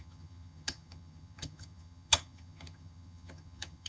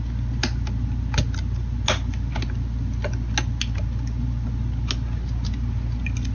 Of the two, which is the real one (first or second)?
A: second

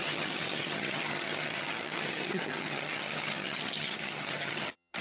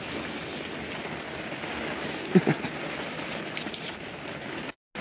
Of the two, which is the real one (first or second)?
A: second